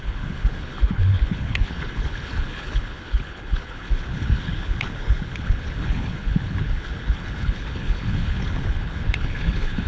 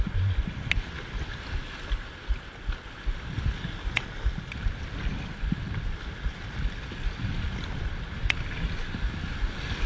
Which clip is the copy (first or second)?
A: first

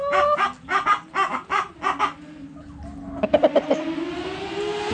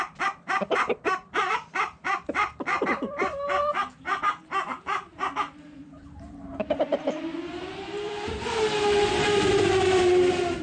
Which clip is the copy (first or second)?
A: second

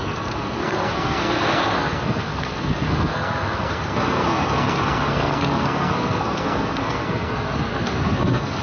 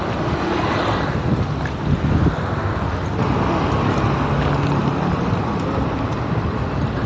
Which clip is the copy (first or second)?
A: first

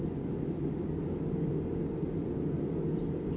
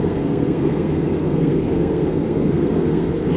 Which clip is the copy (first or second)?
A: second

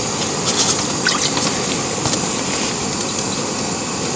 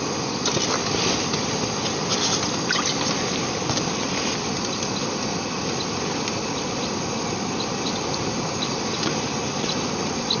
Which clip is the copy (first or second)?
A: second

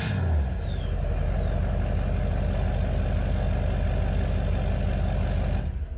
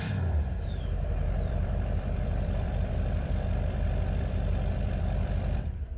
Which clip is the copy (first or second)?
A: second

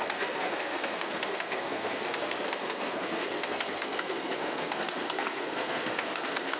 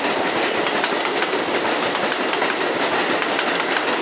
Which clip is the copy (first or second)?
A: first